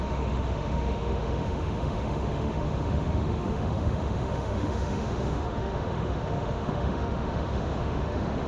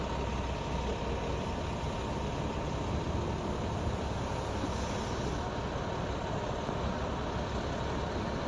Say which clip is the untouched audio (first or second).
second